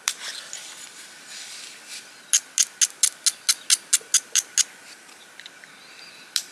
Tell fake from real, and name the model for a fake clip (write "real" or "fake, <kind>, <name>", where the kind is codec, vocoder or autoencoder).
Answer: real